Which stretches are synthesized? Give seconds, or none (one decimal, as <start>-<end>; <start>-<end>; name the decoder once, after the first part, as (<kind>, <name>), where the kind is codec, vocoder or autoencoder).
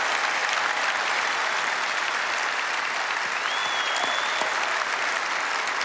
none